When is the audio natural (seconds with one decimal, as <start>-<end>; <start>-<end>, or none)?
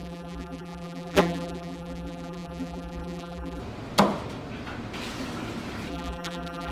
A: 3.6-5.9